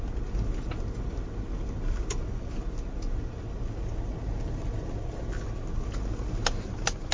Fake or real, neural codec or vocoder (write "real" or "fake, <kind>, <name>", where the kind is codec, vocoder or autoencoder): real